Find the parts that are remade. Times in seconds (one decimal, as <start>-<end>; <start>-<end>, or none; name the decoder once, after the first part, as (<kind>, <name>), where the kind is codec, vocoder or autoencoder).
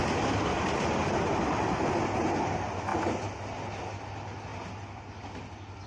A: none